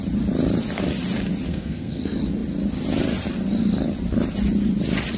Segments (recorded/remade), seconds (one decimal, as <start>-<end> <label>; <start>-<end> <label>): 0.0-1.5 recorded; 1.5-2.0 remade; 2.0-5.2 recorded